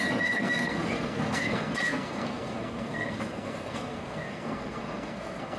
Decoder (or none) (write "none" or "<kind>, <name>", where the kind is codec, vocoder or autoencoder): codec, SNAC